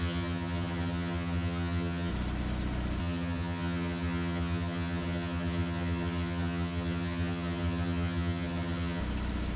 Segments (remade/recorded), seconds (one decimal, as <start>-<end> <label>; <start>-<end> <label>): 0.0-2.1 remade; 2.1-3.0 recorded; 3.0-9.0 remade; 9.0-9.6 recorded